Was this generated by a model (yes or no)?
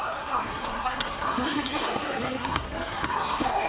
yes